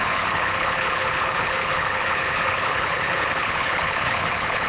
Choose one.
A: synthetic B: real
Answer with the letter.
A